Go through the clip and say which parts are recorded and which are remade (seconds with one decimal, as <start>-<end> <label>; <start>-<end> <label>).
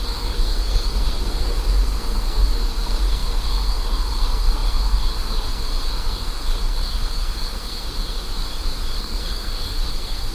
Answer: 0.0-8.4 remade; 8.4-9.0 recorded; 9.0-10.3 remade